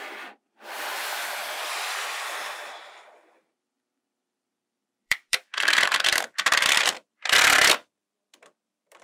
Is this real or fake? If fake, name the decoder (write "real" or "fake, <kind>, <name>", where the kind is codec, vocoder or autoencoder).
fake, vocoder, BigVGAN v2